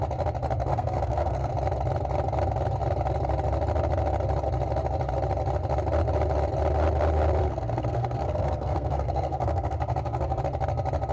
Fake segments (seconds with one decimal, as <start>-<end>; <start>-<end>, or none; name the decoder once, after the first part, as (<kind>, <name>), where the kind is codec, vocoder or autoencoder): 0.7-1.5 (codec, SNAC); 7.4-10.4